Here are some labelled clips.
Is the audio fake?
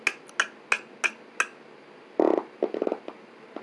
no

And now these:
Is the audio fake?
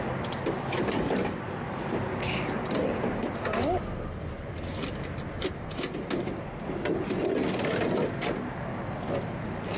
no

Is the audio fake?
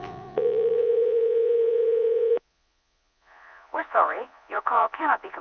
yes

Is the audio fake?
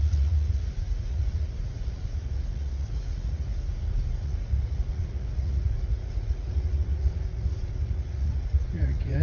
yes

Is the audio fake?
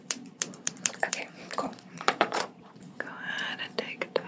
yes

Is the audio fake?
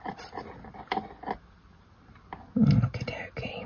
no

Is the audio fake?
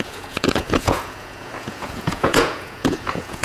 yes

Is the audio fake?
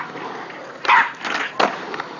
no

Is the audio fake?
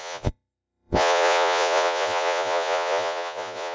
yes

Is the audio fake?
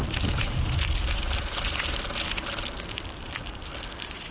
no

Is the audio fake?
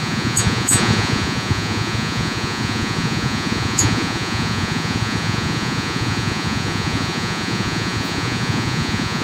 yes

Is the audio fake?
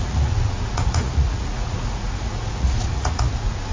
yes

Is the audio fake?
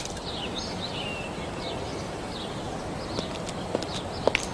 no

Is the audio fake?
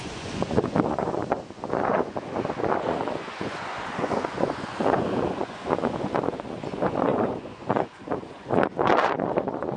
yes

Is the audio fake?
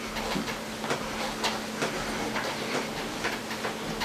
no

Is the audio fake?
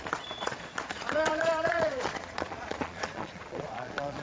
yes